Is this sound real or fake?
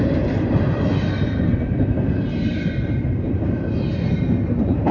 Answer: real